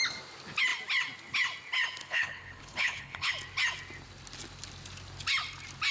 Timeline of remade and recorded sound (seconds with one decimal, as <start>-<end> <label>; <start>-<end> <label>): 0.0-2.0 recorded; 2.0-3.3 remade; 3.3-5.9 recorded